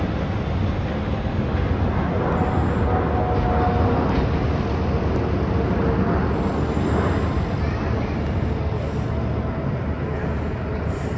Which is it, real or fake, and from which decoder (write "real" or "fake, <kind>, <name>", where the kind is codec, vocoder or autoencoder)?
real